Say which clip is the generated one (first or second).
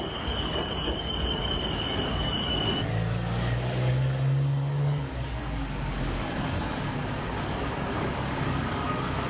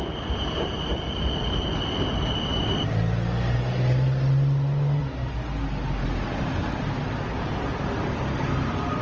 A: first